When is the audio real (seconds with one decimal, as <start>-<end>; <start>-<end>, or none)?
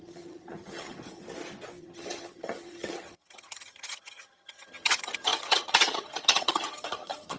1.2-1.8